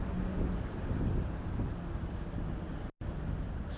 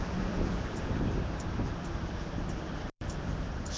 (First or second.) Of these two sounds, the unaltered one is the first